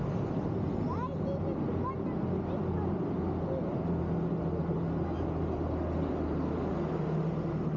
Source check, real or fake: real